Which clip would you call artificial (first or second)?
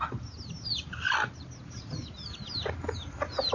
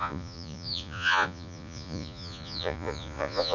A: second